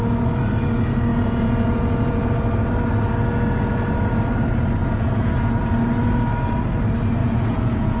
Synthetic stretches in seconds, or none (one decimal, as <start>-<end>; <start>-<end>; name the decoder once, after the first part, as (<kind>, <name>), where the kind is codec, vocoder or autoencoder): 1.1-2.3 (vocoder, Vocos); 4.8-5.6; 7.2-8.0